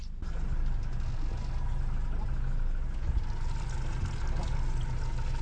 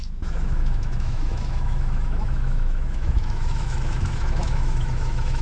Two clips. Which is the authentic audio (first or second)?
first